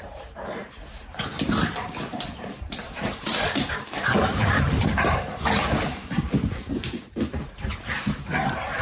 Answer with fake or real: fake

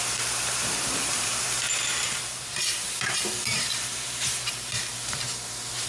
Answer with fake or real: fake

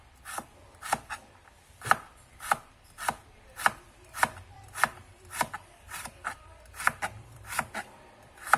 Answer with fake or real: fake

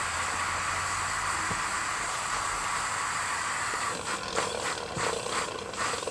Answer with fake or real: real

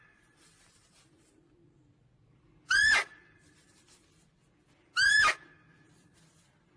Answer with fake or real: real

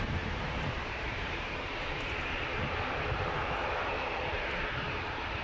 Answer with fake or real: fake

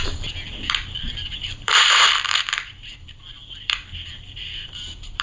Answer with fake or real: fake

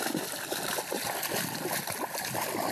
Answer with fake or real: real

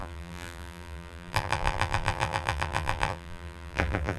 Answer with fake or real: fake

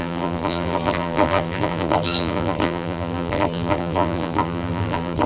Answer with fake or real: fake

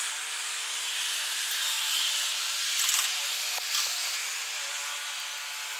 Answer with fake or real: real